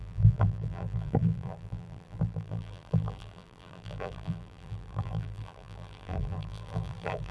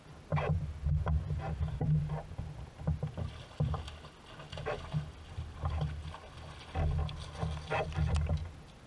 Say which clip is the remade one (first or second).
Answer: first